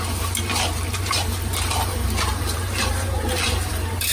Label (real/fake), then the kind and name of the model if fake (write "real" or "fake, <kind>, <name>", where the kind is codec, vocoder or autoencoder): fake, vocoder, BigVGAN v2